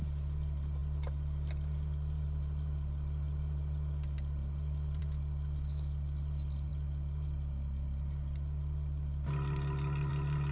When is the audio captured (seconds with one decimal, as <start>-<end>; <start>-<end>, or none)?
0.0-10.5